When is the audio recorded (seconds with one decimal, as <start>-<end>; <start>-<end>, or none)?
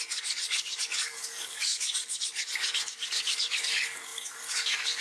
none